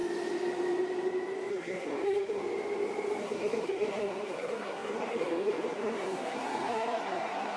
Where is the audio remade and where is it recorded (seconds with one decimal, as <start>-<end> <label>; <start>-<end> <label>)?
0.0-1.5 recorded; 1.5-2.4 remade; 2.4-3.2 recorded; 3.2-7.6 remade